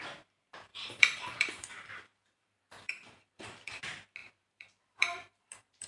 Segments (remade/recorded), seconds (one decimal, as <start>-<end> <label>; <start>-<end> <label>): 0.0-0.7 recorded; 0.7-3.8 remade; 3.8-4.2 recorded; 4.2-5.9 remade